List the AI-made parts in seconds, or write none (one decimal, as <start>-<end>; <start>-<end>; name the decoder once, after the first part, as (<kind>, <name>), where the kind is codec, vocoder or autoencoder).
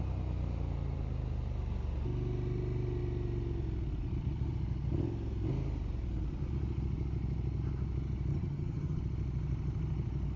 8.3-9.0 (vocoder, HiFi-GAN)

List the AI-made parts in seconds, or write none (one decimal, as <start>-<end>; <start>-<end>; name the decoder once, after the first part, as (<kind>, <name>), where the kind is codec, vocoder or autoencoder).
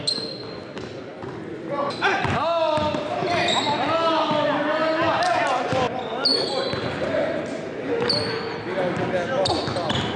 6.3-8.0 (vocoder, BigVGAN v2)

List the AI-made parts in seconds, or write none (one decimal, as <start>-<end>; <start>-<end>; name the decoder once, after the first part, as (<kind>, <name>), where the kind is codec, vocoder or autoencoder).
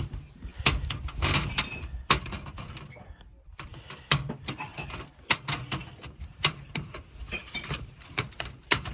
0.0-0.5 (vocoder, BigVGAN v2); 4.3-4.7; 6.2-8.9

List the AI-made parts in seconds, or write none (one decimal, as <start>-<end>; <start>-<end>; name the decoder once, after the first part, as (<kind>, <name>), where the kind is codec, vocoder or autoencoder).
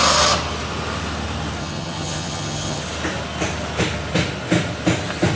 1.6-2.8 (vocoder, HiFi-GAN)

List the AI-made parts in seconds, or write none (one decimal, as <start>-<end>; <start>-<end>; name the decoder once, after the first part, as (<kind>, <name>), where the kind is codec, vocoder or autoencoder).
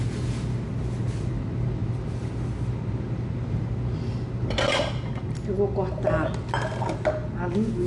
none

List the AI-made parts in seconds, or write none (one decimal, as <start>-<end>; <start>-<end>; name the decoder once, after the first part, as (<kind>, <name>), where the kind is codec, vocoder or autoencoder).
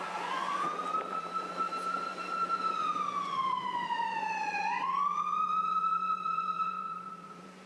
0.0-7.7 (vocoder, Vocos)